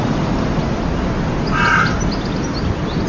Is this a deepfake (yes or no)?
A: no